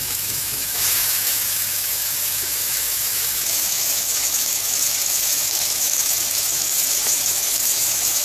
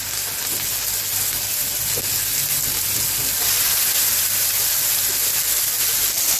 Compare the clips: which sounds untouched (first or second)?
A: second